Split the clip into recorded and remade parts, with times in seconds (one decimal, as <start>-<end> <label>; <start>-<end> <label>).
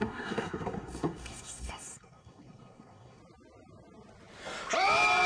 0.0-3.2 remade; 3.2-5.3 recorded